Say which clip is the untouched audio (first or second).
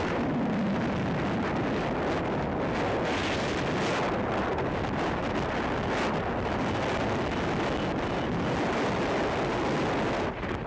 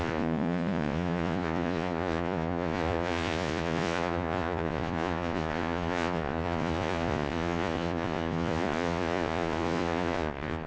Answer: first